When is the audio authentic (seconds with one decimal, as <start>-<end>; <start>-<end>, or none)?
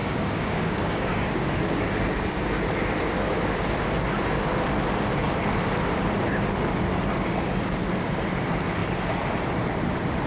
1.9-10.3